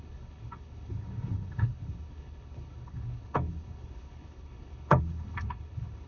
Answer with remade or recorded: remade